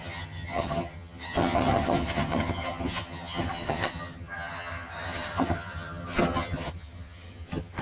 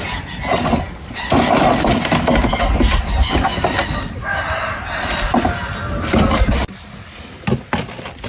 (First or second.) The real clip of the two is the second